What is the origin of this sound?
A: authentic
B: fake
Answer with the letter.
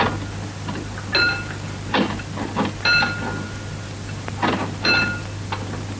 A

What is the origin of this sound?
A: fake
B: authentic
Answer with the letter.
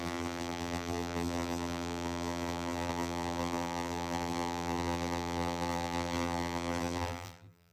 A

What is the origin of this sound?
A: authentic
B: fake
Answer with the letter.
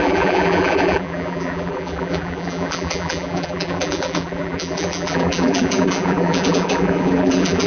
B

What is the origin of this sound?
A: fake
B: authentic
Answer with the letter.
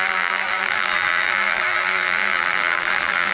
A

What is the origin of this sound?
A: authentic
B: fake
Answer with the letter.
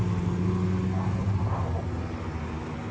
A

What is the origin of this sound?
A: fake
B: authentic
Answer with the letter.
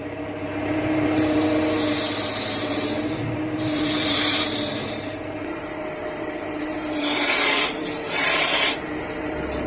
A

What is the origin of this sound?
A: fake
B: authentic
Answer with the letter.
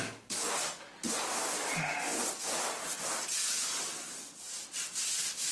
B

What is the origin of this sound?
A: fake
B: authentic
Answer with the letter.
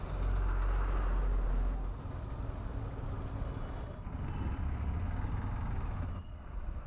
B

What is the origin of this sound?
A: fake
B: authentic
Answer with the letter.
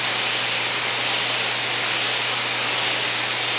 B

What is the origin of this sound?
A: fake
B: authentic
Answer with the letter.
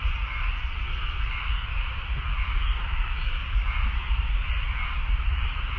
B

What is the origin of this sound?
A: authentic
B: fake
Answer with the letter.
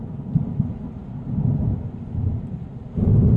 A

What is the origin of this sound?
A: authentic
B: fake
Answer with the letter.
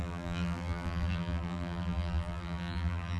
B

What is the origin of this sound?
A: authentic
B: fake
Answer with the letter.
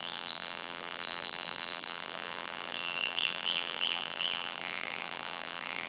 B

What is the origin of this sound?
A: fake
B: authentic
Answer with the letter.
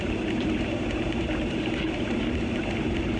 A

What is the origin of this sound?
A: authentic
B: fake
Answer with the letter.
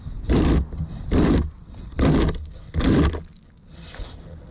A